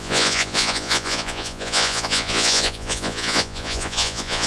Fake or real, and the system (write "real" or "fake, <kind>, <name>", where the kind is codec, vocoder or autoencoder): fake, vocoder, Vocos